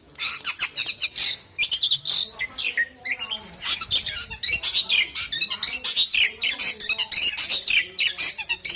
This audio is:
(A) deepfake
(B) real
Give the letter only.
B